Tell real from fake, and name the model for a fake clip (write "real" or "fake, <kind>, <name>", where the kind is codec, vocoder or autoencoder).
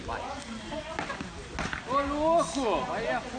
real